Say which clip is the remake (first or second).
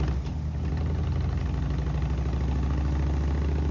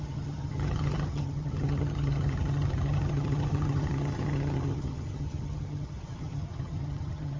second